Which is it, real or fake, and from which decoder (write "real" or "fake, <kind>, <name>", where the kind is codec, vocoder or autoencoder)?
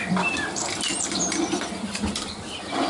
fake, vocoder, BigVGAN v2